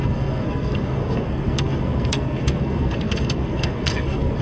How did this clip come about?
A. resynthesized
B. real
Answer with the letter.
A